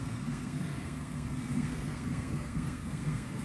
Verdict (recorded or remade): remade